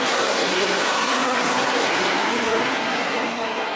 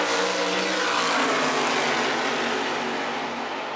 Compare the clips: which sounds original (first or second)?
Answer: second